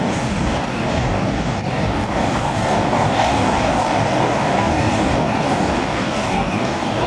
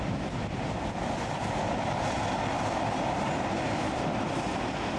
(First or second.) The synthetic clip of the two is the first